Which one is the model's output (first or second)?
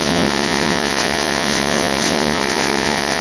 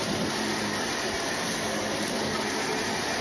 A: first